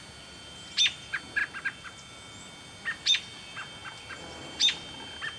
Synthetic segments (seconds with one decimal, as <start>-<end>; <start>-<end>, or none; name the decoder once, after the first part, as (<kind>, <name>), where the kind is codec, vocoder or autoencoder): none